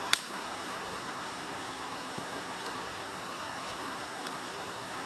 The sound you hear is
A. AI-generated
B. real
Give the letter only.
A